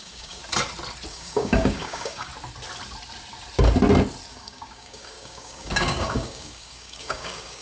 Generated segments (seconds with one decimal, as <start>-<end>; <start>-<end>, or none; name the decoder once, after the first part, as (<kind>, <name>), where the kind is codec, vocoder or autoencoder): 0.0-0.4 (codec, DAC); 1.1-2.3; 4.3-7.6